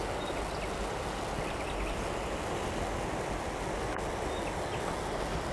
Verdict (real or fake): real